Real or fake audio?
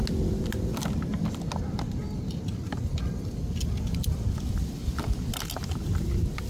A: real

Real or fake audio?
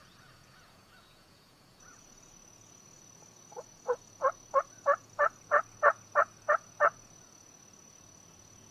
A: fake